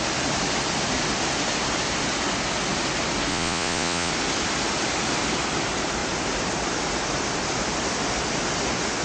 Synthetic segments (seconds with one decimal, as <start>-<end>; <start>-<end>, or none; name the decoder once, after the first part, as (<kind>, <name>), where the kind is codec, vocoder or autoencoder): 3.3-4.1 (vocoder, Vocos)